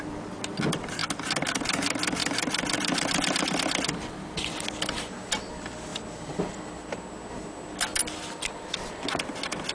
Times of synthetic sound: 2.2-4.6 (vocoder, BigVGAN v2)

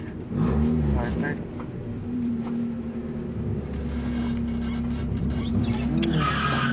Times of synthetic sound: 1.1-2.4 (vocoder, BigVGAN v2); 5.0-5.9

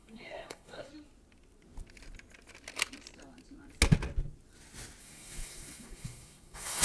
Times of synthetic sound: 0.0-0.9 (codec, SNAC); 5.0-6.8